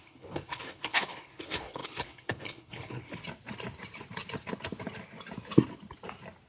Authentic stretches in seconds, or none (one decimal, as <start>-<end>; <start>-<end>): 3.2-6.5